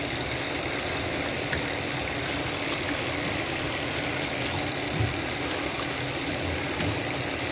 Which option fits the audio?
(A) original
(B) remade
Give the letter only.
B